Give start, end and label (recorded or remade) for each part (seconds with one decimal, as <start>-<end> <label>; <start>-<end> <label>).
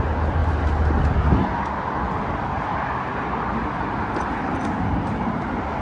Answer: 0.0-5.8 recorded